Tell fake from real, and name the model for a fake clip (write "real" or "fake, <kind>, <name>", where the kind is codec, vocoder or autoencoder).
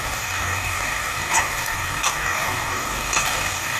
fake, codec, DAC